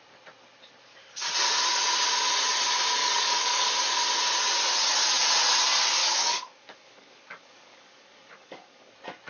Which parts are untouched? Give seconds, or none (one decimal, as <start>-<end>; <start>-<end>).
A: 0.0-3.0; 3.7-6.0; 8.9-9.3